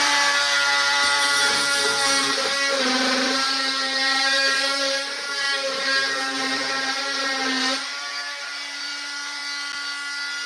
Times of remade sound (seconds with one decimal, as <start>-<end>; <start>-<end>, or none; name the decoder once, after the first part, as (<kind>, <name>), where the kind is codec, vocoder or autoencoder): 0.0-9.4 (vocoder, BigVGAN v2)